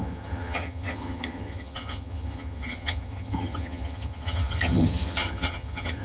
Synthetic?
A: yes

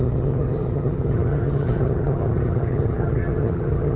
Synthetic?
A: yes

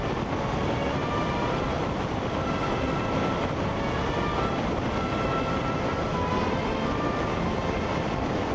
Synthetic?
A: no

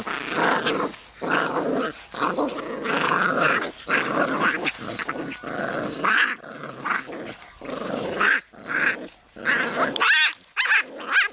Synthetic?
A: no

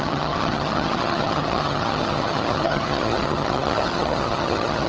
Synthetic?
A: yes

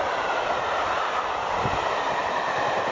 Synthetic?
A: no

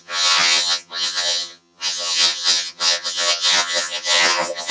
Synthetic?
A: yes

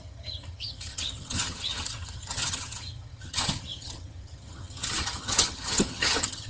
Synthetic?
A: yes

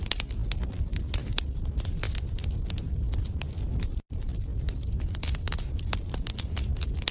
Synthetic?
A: no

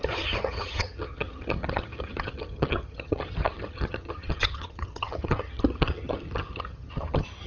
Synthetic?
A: yes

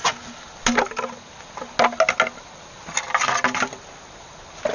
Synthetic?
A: no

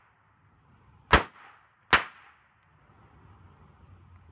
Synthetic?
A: no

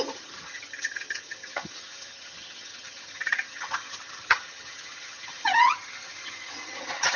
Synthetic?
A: yes